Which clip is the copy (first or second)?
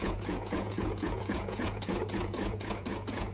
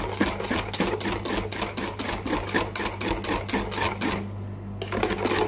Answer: first